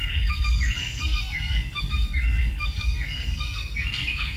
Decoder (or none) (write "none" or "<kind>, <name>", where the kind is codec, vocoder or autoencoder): codec, SNAC